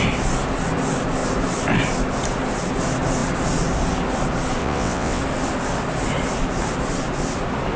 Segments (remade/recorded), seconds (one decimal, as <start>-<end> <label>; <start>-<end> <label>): 0.0-4.6 recorded; 4.6-5.2 remade; 5.2-7.8 recorded